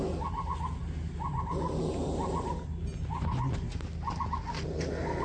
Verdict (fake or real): real